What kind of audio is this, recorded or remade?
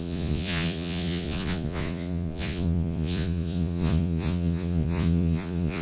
remade